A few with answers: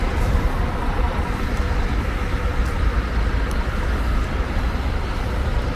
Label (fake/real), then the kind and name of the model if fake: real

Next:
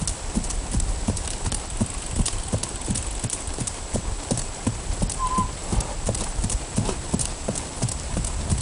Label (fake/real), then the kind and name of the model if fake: fake, vocoder, BigVGAN v2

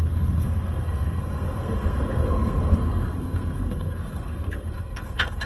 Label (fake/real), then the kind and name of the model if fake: fake, codec, SNAC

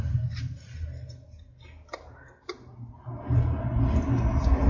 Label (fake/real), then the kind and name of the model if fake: real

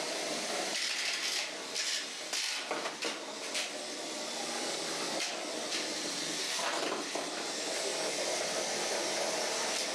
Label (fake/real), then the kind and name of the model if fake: fake, vocoder, BigVGAN v2